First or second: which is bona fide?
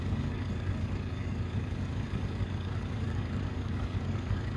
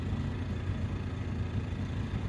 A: second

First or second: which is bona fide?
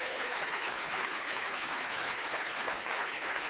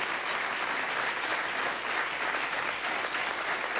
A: second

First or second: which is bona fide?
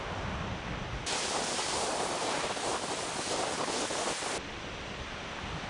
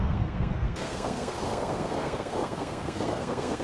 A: first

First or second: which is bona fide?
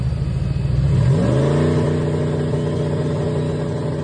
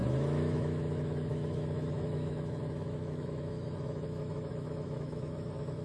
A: first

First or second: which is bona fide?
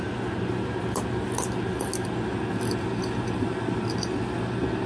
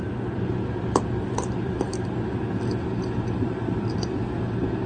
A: first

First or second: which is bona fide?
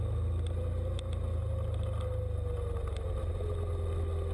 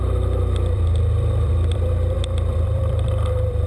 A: first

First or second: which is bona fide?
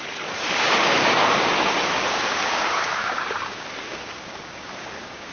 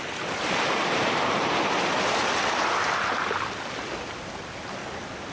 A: second